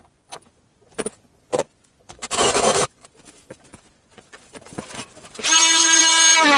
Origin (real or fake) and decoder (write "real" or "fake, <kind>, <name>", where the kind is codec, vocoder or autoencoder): fake, vocoder, Vocos